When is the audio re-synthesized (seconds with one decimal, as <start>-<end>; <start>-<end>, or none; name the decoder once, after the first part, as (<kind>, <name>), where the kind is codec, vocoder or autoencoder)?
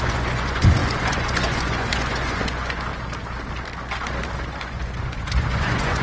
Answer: 0.0-2.9 (vocoder, Vocos); 4.6-6.0